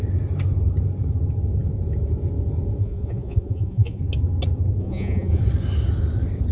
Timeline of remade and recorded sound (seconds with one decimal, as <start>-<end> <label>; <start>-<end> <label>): 0.0-2.8 recorded; 2.8-4.0 remade; 4.0-4.8 recorded; 4.8-5.4 remade; 5.4-6.5 recorded